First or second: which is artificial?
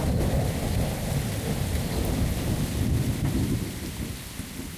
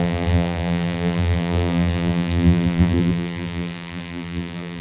second